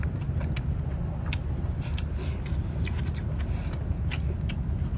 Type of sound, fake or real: real